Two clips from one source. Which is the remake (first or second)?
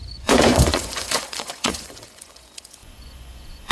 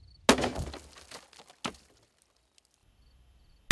first